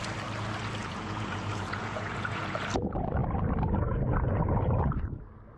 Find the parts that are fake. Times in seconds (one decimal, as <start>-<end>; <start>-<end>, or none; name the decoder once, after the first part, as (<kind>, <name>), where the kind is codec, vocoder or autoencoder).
0.8-2.6 (vocoder, Vocos)